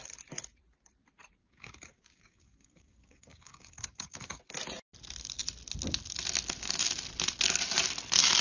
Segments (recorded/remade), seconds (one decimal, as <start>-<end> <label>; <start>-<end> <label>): 0.0-1.4 recorded; 1.4-4.4 remade; 4.4-8.4 recorded